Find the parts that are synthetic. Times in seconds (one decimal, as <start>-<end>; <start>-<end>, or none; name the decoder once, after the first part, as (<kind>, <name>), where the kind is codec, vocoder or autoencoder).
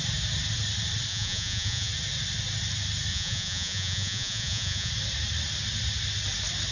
1.1-1.9 (vocoder, Vocos); 3.1-4.9